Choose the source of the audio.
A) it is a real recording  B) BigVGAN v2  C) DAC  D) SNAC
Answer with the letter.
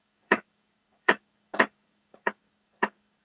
C